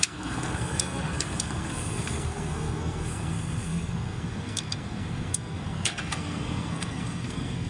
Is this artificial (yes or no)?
yes